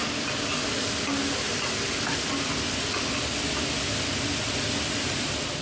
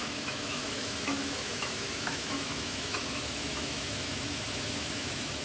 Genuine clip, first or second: first